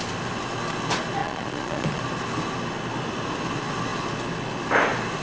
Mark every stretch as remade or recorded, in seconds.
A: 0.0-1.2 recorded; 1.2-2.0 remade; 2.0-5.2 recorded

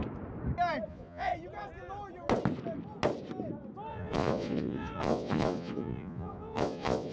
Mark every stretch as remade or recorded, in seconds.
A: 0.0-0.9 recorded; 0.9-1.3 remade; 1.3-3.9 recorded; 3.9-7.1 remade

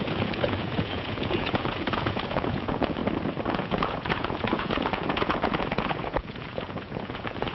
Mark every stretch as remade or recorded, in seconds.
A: 0.0-3.0 remade; 3.0-3.5 recorded; 3.5-7.5 remade

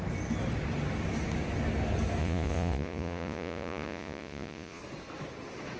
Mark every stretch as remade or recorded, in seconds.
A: 0.0-2.2 recorded; 2.2-4.8 remade; 4.8-5.8 recorded

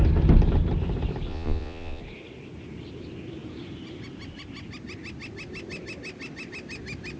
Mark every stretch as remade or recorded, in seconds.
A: 0.0-1.3 recorded; 1.3-2.0 remade; 2.0-7.2 recorded

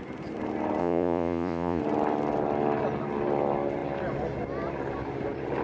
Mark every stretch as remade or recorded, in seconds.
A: 0.0-0.8 recorded; 0.8-1.8 remade; 1.8-5.6 recorded

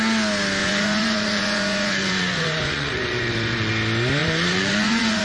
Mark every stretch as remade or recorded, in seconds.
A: 0.0-0.6 recorded; 0.6-3.7 remade; 3.7-4.2 recorded; 4.2-5.2 remade